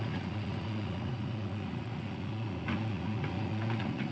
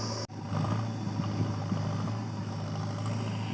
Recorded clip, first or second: second